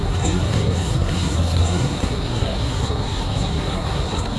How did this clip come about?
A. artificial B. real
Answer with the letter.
A